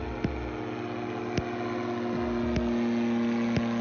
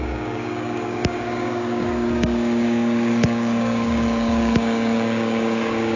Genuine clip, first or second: first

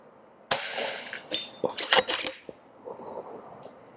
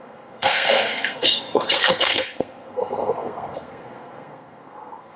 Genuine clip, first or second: first